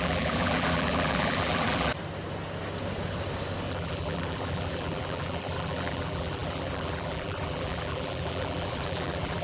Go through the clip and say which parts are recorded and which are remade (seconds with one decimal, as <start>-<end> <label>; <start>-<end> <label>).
0.0-1.9 remade; 1.9-3.7 recorded; 3.7-9.4 remade